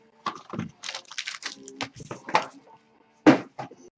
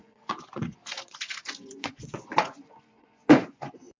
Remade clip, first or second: second